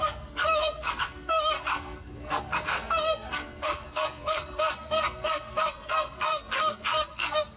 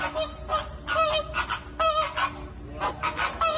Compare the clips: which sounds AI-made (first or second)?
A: first